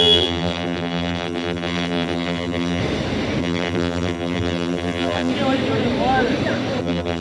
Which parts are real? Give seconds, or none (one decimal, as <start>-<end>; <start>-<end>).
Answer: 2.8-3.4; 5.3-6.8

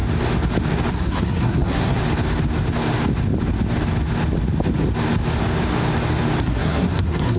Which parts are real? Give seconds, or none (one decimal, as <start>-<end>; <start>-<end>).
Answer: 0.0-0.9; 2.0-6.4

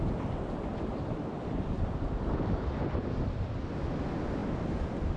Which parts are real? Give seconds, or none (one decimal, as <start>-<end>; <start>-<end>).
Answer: 0.0-0.7; 3.8-5.2

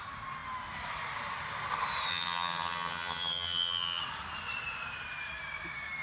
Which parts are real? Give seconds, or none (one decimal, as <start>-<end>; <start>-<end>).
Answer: 0.0-2.1; 4.0-6.0

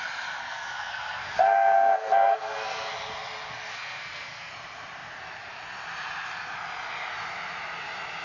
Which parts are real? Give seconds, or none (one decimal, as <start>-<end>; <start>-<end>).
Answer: 0.0-0.4; 2.9-3.7; 4.5-8.2

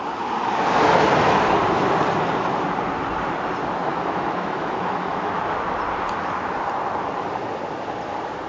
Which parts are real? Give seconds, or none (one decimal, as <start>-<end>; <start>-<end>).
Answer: 0.0-3.9; 5.4-8.5

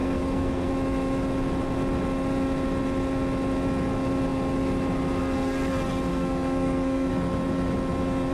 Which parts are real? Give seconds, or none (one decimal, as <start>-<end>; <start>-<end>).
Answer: 0.7-6.1; 7.1-8.3